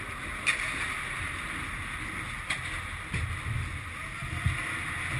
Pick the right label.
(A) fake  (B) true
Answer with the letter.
B